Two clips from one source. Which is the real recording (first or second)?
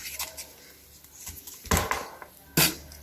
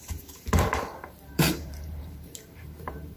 first